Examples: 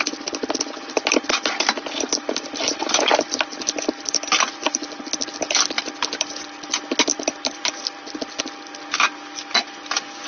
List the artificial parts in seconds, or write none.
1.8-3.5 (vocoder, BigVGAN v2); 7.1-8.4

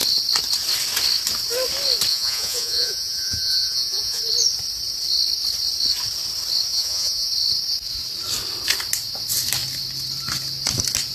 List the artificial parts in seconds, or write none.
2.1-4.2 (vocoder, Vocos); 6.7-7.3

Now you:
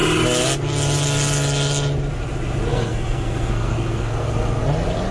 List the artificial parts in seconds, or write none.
2.7-4.6 (codec, SNAC)

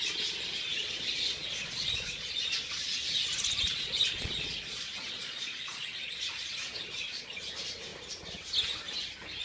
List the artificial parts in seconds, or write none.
0.7-2.4 (vocoder, Vocos); 3.7-7.3

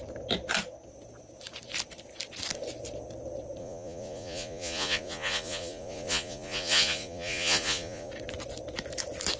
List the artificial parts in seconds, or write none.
3.6-8.1 (vocoder, Vocos)

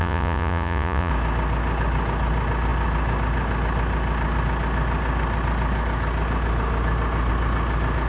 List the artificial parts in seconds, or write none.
0.0-1.1 (vocoder, Vocos)